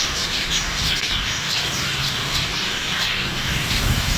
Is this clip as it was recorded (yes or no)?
no